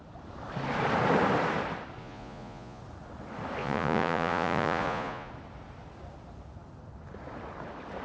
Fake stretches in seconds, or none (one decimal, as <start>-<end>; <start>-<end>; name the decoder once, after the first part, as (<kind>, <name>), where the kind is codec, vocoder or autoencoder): 2.0-2.8 (vocoder, Vocos); 3.6-5.3